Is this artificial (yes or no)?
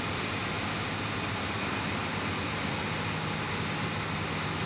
no